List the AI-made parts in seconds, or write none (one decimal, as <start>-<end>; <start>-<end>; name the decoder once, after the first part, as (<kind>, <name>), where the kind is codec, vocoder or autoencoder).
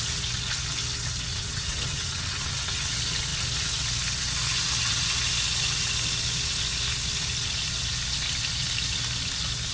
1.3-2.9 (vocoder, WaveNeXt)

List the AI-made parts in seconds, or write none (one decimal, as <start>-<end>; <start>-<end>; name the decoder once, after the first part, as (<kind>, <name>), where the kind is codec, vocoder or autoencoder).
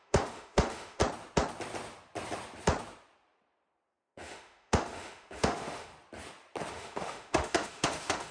0.0-1.0 (autoencoder, DAC-VAE); 4.0-5.9; 6.7-8.3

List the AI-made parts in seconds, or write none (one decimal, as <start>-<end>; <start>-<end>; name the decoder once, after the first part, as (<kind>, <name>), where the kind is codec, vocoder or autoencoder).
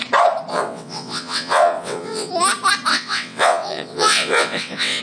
0.5-2.3 (vocoder, WaveNeXt); 2.9-5.0